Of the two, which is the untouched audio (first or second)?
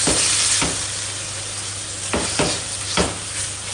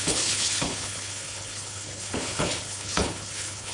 first